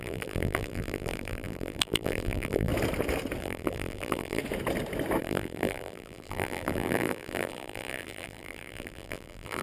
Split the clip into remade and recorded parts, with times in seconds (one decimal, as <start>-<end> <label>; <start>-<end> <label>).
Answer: 0.0-2.7 remade; 2.7-3.4 recorded; 3.4-4.4 remade; 4.4-5.2 recorded; 5.2-9.6 remade